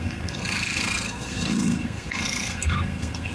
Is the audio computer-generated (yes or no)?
yes